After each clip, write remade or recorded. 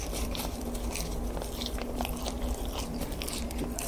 remade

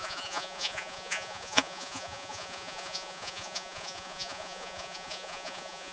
remade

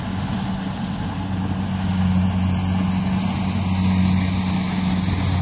recorded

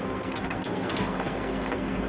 remade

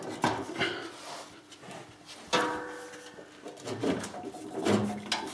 recorded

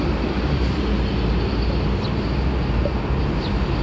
recorded